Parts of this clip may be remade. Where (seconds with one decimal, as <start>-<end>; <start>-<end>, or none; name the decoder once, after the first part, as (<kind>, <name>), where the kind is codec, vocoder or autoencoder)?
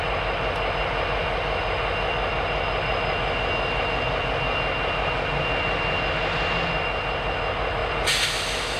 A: none